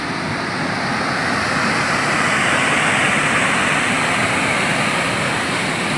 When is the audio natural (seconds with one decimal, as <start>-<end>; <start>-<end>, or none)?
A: 0.0-6.0